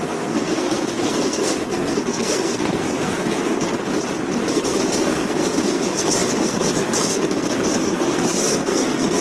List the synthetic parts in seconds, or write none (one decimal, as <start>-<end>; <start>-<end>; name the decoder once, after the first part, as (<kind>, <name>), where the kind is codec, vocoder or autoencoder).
0.0-3.7 (codec, SNAC); 4.5-9.2